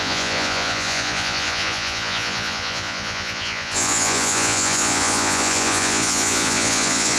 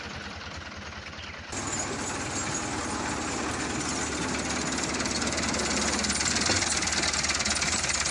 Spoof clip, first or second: first